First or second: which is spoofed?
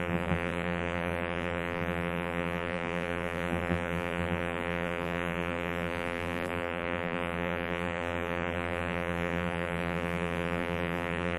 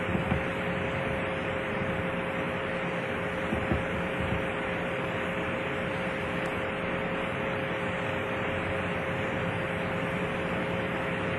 first